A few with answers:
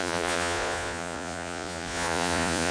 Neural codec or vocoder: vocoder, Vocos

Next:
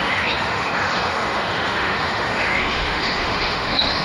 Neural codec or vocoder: autoencoder, DAC-VAE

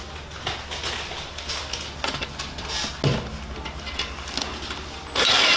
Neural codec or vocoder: none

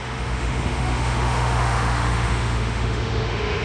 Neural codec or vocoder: autoencoder, DAC-VAE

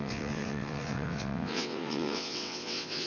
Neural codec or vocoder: vocoder, WaveNeXt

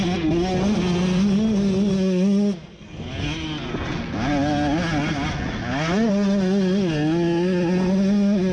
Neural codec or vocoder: none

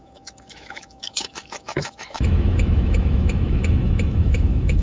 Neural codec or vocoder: autoencoder, DAC-VAE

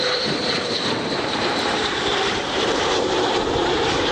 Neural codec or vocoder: vocoder, BigVGAN v2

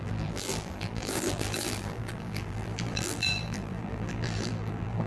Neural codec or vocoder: vocoder, BigVGAN v2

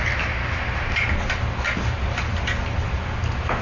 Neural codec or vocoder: none